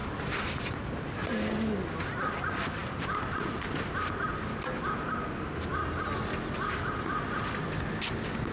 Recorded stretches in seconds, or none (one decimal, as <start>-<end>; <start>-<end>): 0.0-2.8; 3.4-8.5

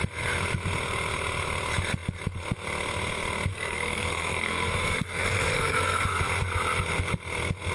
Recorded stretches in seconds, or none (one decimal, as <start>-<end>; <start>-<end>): 0.0-3.5; 6.2-7.7

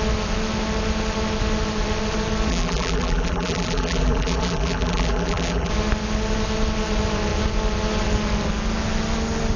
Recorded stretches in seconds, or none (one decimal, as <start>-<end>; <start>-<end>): 0.0-2.5; 5.7-9.6

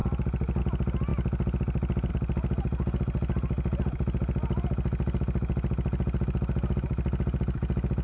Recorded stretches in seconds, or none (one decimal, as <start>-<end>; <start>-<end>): 0.0-8.0

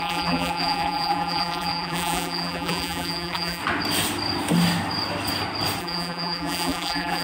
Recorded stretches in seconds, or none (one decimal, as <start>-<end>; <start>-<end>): 3.6-5.8

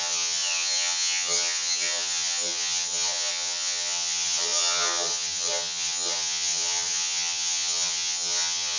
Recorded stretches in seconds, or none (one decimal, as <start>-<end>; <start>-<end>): none

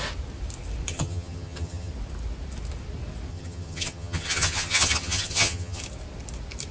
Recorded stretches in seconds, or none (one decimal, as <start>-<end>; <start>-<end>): 0.0-0.9; 1.9-3.3; 5.8-6.7

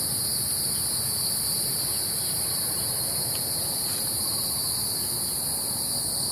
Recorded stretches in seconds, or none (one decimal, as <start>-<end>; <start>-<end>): 0.0-1.9; 4.8-6.3